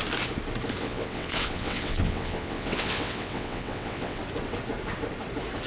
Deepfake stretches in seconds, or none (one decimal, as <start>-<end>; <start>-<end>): 0.8-4.2